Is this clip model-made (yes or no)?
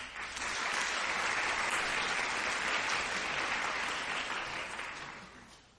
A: no